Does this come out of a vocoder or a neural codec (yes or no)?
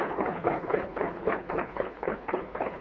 yes